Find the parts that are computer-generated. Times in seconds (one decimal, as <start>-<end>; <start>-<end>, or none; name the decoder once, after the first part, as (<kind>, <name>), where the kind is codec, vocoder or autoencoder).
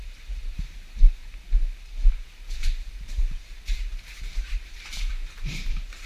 0.0-1.2 (vocoder, BigVGAN v2); 2.3-6.1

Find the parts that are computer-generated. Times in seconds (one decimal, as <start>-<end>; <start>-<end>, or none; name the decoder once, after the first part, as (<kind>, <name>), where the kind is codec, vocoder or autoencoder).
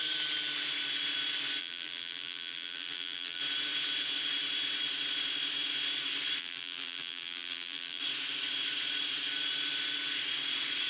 1.6-3.4 (vocoder, BigVGAN v2); 6.4-8.0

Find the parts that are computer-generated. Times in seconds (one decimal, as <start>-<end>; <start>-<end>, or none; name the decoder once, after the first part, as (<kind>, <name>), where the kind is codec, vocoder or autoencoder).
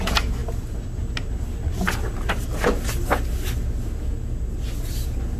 none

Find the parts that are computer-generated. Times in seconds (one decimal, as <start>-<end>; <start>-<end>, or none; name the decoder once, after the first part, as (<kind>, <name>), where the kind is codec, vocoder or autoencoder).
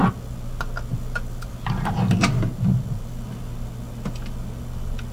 none